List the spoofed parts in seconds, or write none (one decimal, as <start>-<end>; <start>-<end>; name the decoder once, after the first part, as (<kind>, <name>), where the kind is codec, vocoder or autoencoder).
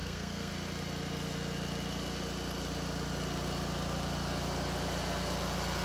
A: 0.0-0.5 (codec, SNAC)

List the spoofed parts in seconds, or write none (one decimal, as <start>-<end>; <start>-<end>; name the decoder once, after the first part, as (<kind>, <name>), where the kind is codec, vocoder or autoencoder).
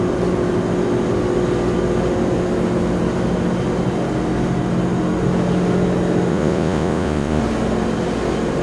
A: 6.3-7.4 (vocoder, Vocos)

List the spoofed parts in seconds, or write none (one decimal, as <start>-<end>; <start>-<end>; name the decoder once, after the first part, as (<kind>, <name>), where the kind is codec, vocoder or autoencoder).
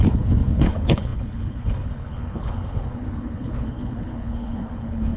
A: 0.0-5.2 (codec, HILCodec)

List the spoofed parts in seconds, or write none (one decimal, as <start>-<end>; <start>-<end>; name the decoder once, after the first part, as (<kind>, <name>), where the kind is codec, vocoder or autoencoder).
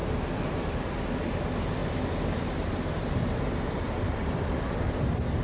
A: none